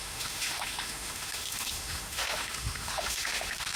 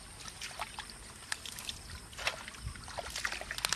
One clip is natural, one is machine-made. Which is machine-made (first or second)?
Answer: first